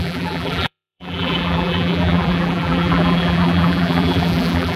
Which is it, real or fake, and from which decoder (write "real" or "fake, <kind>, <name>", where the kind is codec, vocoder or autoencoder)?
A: fake, vocoder, BigVGAN v2